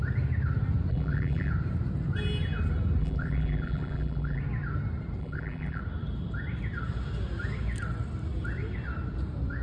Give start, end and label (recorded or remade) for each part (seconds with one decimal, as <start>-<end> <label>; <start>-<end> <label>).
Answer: 0.0-0.9 recorded; 0.9-1.5 remade; 1.5-3.0 recorded; 3.0-4.4 remade; 4.4-5.2 recorded; 5.2-5.8 remade; 5.8-9.6 recorded